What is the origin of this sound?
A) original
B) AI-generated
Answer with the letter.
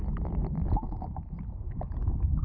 A